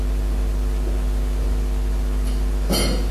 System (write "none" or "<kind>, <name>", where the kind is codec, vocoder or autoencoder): none